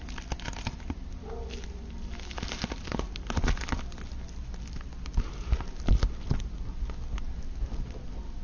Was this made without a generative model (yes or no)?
yes